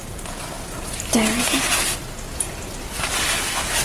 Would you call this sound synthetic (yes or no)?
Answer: no